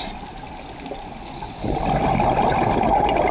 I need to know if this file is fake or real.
real